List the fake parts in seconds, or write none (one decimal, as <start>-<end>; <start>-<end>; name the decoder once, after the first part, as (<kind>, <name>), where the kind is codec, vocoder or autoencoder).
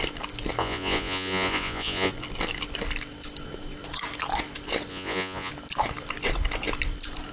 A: 0.6-2.1 (vocoder, Vocos); 4.9-5.5